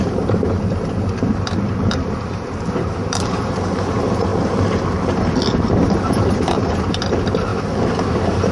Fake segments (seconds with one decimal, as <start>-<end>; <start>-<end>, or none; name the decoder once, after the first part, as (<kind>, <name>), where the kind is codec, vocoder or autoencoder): 0.0-4.3 (vocoder, BigVGAN v2); 6.2-7.5